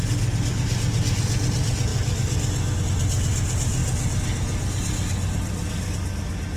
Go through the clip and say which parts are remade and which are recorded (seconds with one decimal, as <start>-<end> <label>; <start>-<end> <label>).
0.0-6.6 recorded